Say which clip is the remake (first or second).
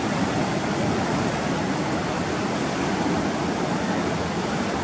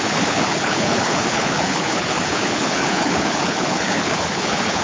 second